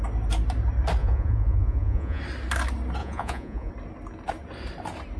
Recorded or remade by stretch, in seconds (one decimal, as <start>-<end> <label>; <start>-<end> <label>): 0.0-1.0 recorded; 1.0-2.2 remade; 2.2-3.0 recorded; 3.0-3.7 remade; 3.7-5.2 recorded